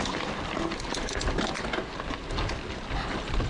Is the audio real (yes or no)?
yes